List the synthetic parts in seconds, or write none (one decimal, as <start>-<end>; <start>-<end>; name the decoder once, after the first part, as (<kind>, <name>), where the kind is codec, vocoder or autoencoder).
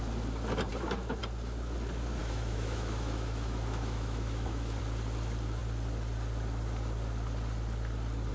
2.2-4.8 (autoencoder, DAC-VAE)